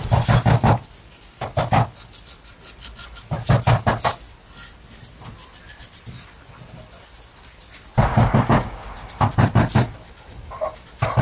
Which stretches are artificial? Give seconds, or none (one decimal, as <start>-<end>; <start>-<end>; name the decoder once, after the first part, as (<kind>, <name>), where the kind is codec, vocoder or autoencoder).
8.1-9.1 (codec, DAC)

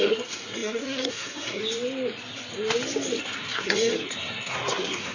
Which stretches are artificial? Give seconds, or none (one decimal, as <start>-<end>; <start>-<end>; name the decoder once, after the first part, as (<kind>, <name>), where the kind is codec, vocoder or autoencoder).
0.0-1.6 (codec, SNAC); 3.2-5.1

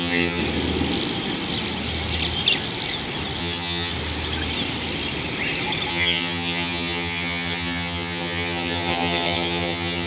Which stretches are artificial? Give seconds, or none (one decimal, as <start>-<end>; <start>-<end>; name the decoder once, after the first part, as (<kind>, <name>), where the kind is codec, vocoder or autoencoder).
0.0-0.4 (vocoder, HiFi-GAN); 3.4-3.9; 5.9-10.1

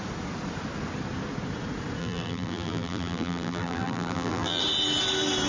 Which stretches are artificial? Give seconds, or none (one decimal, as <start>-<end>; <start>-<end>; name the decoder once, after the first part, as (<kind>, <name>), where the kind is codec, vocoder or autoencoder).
2.0-4.6 (vocoder, BigVGAN v2)